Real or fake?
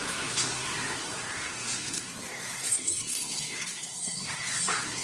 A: fake